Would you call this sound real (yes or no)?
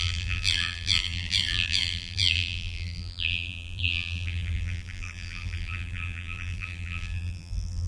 no